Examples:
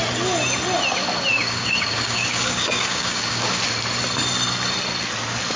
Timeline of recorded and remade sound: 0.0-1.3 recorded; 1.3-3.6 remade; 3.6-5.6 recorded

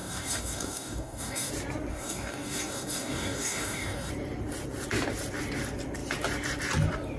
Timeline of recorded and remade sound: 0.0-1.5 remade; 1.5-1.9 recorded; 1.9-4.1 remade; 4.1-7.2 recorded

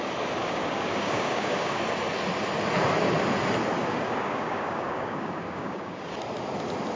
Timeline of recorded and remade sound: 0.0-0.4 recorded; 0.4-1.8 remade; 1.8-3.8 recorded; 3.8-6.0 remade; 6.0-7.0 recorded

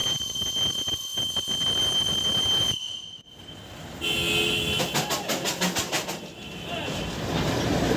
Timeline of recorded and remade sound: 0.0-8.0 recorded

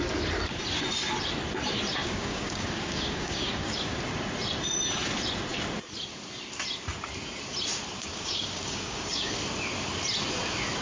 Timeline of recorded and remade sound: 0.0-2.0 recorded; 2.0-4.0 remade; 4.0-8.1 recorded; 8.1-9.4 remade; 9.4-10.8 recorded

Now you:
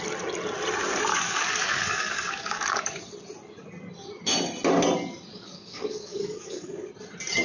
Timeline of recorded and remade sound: 0.0-1.1 recorded; 1.1-3.0 remade; 3.0-5.3 recorded; 5.3-6.9 remade; 6.9-7.4 recorded

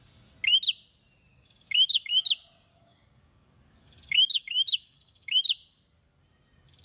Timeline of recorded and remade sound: 0.0-1.3 recorded; 1.3-2.1 remade; 2.1-2.7 recorded; 2.7-5.4 remade; 5.4-6.8 recorded

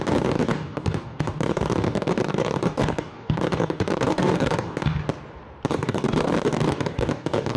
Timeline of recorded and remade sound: 0.0-5.0 remade; 5.0-5.7 recorded; 5.7-7.6 remade